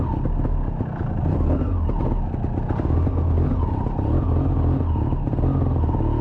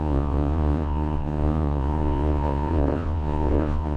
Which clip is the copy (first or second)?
second